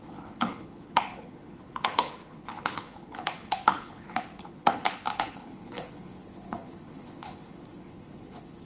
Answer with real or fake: fake